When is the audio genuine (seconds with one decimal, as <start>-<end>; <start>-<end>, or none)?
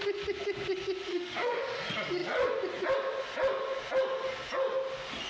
0.0-1.1; 1.6-5.3